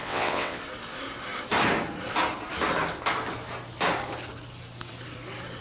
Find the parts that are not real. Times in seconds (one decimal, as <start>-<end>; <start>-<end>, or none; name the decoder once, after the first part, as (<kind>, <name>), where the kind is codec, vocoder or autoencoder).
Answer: 0.0-0.6 (vocoder, WaveNeXt)